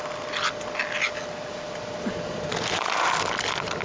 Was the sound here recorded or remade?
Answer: recorded